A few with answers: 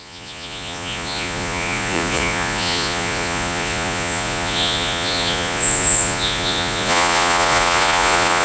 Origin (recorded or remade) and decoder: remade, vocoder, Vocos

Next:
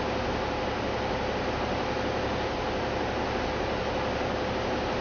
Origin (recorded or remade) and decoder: recorded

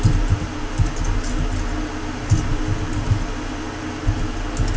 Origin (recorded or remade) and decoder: recorded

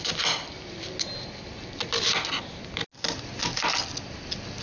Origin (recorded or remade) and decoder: recorded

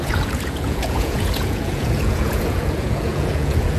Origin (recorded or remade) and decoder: remade, vocoder, Vocos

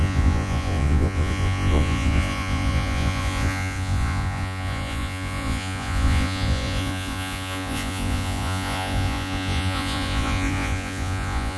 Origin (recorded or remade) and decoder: remade, vocoder, Vocos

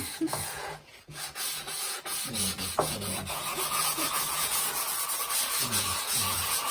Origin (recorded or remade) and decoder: remade, vocoder, Vocos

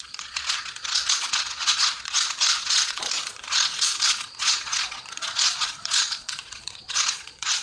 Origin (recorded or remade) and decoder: remade, vocoder, Vocos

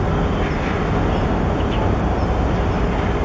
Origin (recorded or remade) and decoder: recorded